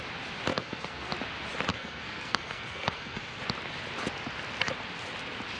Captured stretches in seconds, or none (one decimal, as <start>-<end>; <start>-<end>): 0.0-0.5; 1.1-1.7; 3.4-5.6